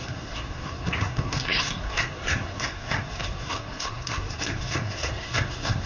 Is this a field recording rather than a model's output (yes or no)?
no